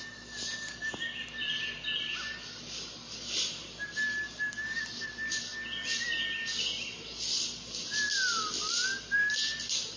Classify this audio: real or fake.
real